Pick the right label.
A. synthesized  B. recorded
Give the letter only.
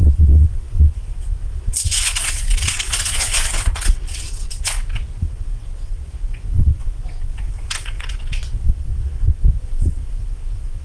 A